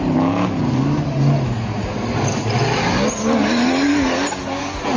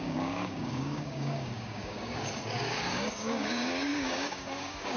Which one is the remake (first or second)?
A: second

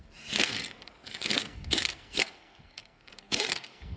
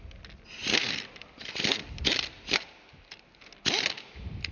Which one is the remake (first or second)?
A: first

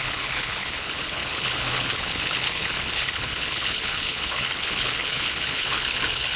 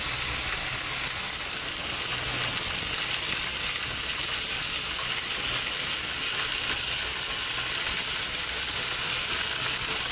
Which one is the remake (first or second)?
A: first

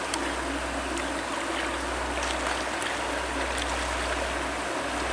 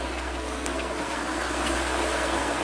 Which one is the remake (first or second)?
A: second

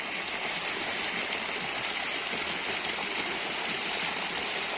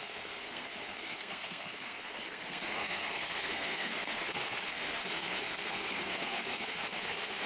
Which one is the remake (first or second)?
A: second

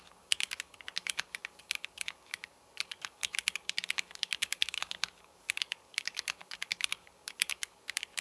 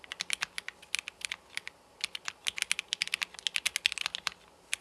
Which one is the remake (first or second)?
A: first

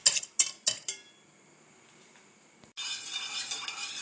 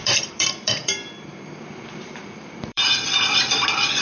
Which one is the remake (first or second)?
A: second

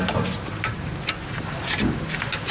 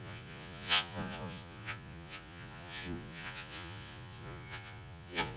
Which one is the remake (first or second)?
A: second